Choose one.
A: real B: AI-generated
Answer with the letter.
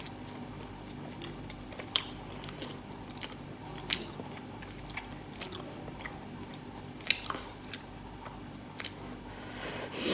A